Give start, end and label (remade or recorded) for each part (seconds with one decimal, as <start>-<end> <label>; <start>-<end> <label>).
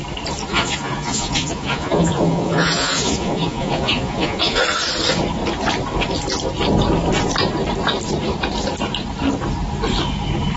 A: 0.0-0.5 recorded; 0.5-4.6 remade; 4.6-10.6 recorded